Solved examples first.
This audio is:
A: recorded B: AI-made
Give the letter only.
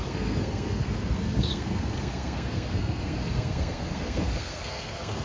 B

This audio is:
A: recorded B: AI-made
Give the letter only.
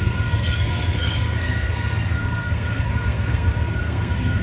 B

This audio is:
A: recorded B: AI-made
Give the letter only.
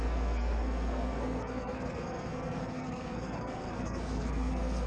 B